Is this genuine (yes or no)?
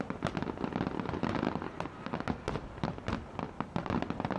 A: yes